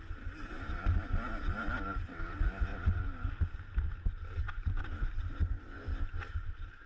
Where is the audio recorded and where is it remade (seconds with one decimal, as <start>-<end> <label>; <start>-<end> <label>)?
0.0-6.9 recorded

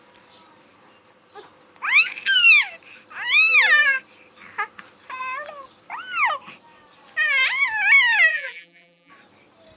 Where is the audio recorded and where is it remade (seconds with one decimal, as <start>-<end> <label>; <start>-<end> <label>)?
0.0-8.3 recorded; 8.3-9.1 remade; 9.1-9.8 recorded

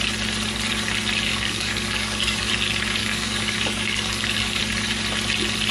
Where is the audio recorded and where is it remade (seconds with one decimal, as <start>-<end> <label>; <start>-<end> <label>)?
0.0-1.3 recorded; 1.3-2.5 remade; 2.5-3.0 recorded; 3.0-4.6 remade; 4.6-5.7 recorded